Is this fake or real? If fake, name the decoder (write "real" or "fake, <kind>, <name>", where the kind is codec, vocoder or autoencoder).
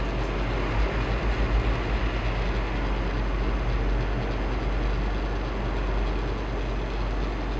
real